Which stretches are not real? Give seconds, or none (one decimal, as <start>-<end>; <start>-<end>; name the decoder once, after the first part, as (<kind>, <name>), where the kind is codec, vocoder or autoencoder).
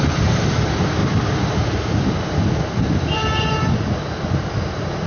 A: none